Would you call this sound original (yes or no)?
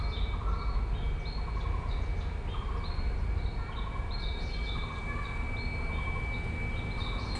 yes